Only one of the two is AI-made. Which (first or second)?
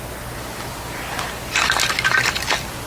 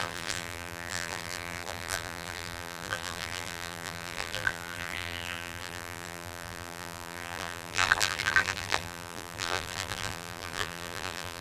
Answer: second